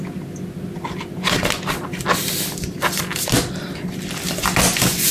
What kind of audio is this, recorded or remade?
recorded